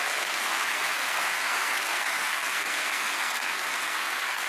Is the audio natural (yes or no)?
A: no